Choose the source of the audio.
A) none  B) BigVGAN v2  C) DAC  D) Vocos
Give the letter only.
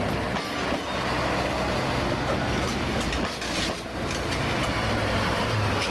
A